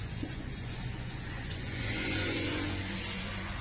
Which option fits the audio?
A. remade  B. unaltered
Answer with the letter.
A